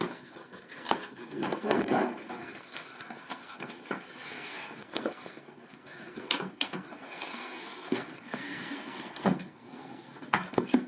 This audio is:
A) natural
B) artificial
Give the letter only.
B